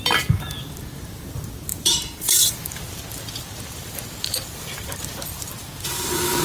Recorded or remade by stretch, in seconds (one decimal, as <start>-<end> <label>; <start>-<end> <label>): 0.0-1.7 recorded; 1.7-5.5 remade; 5.5-6.4 recorded